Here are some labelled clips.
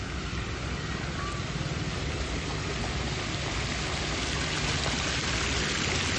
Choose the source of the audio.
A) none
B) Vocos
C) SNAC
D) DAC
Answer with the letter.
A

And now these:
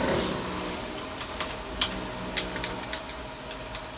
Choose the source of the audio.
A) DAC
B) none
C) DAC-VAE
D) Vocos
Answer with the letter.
B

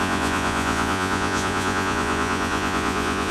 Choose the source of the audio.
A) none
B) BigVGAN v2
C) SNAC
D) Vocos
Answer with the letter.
D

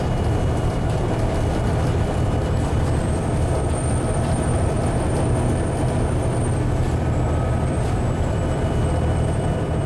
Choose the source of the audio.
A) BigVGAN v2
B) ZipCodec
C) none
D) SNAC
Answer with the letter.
A